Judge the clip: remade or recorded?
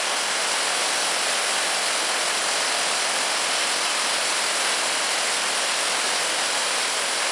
recorded